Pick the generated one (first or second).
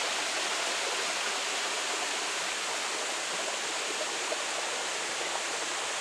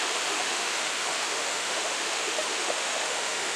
second